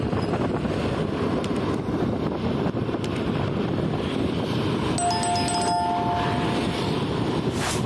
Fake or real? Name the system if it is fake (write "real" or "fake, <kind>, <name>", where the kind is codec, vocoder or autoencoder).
real